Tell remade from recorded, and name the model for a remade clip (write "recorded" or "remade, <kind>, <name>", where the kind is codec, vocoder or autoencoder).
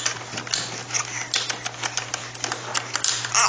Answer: recorded